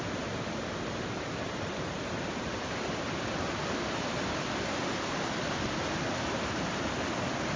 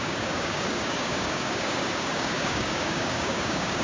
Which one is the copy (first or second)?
second